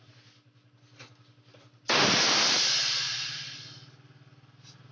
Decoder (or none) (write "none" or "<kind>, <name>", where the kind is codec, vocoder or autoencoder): none